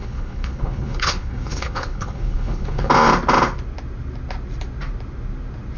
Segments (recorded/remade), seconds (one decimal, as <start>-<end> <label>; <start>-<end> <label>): 0.0-2.9 remade; 2.9-5.8 recorded